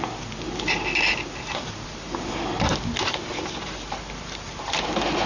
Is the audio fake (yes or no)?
no